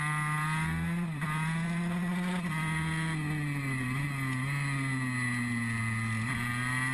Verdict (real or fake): real